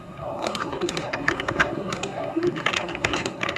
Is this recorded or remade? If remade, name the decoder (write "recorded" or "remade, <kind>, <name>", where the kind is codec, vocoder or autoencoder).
remade, codec, SNAC